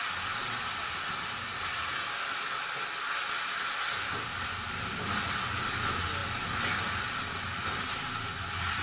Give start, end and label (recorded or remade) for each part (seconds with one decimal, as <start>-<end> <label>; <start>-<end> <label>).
0.0-8.8 recorded